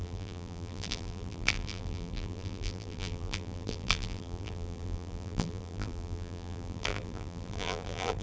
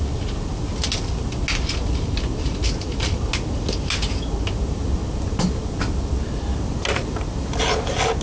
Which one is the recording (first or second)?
second